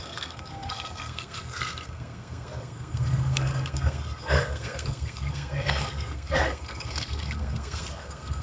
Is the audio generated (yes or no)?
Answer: yes